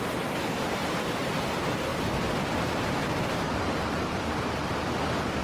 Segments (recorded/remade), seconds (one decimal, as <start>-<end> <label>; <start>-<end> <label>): 0.0-0.8 remade; 0.8-1.4 recorded; 1.4-1.9 remade; 1.9-2.6 recorded; 2.6-3.0 remade; 3.0-5.4 recorded